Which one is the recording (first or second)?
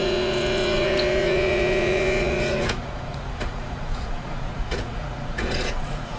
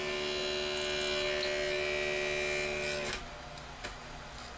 second